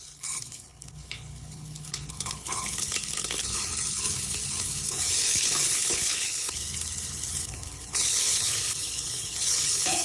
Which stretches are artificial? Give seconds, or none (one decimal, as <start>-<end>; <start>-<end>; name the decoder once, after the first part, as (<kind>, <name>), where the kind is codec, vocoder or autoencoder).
0.0-10.0 (codec, HILCodec)

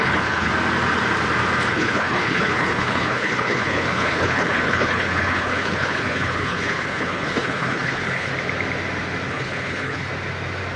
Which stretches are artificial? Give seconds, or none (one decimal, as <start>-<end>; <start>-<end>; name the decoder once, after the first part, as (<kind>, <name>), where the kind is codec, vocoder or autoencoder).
0.0-0.5 (codec, HILCodec); 1.7-8.3; 9.3-10.1